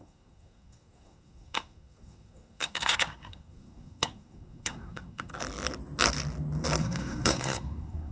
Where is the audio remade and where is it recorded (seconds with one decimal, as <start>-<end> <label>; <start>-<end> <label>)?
0.0-5.3 remade; 5.3-6.8 recorded; 6.8-8.1 remade